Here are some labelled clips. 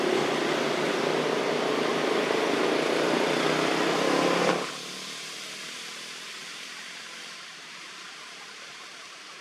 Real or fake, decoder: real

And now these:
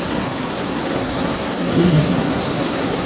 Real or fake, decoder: fake, codec, SNAC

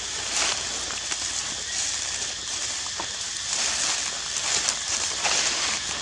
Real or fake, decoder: real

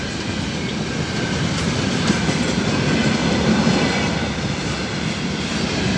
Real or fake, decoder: real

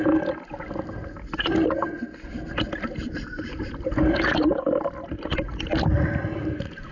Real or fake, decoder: real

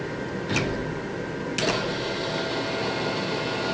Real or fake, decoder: real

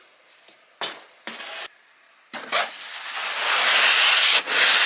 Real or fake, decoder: real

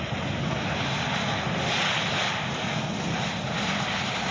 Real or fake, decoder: real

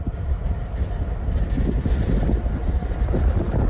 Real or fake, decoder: real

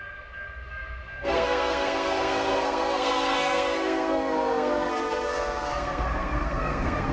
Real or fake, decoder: fake, codec, SNAC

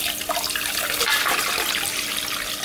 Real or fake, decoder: real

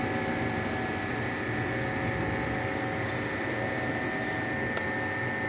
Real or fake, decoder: real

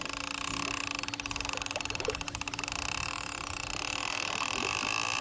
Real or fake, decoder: real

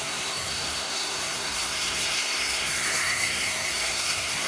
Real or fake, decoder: fake, codec, SNAC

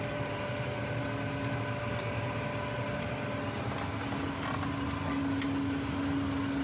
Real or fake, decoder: real